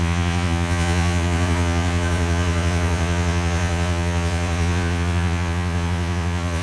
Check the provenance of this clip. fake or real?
fake